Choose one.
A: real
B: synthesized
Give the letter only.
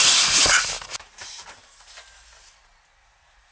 A